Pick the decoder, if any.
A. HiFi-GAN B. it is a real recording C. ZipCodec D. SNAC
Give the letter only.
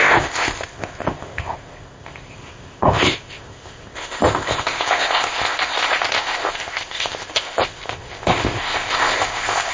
C